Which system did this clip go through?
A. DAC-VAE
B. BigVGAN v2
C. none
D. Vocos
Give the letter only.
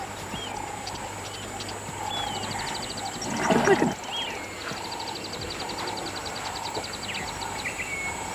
C